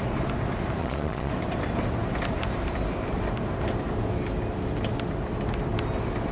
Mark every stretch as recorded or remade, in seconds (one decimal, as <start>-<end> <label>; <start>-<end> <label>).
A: 0.0-0.8 recorded; 0.8-1.3 remade; 1.3-6.3 recorded